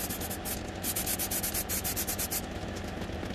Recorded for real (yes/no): yes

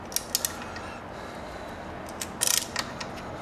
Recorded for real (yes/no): yes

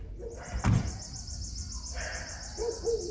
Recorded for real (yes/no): yes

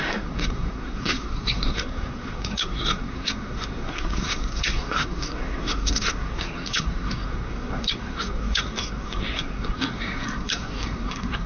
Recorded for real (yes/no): no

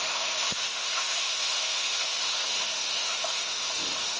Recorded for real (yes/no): no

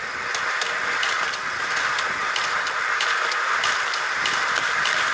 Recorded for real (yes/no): yes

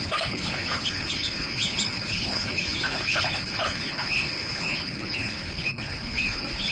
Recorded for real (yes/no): no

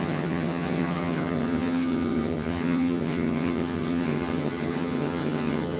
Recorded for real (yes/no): no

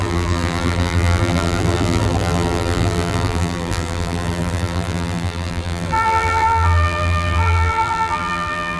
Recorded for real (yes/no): no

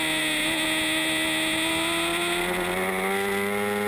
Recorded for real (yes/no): yes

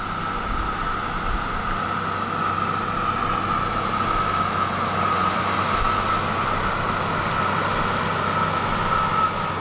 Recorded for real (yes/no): yes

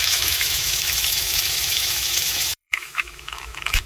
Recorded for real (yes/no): no